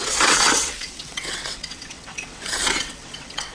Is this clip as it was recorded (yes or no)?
no